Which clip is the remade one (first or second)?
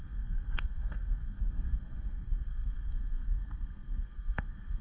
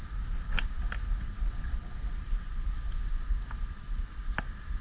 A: first